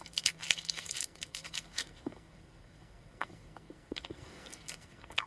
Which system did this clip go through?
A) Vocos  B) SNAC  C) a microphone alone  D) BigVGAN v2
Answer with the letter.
B